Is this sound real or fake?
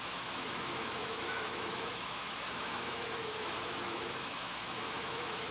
fake